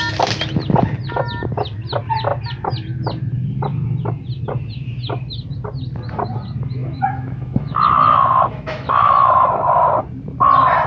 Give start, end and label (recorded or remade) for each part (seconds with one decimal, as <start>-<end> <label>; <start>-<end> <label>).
0.0-6.8 recorded; 6.8-9.4 remade; 9.4-10.9 recorded